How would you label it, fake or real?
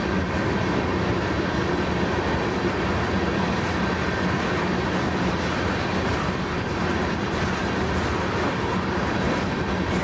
real